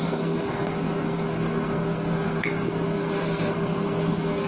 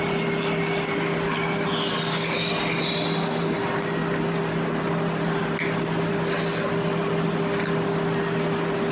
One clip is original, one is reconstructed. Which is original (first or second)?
second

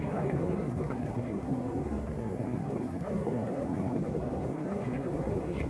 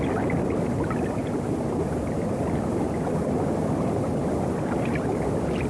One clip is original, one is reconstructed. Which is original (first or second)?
second